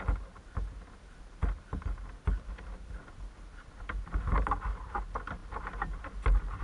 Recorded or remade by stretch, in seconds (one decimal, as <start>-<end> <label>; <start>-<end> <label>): 0.0-6.6 recorded